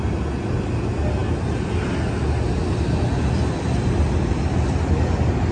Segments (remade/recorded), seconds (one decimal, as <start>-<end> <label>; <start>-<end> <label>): 0.0-5.5 recorded